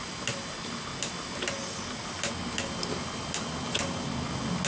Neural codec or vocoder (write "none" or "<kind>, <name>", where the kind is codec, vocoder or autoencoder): none